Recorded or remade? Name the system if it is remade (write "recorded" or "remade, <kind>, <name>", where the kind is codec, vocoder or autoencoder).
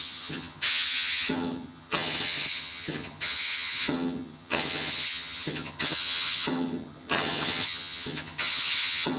remade, vocoder, HiFi-GAN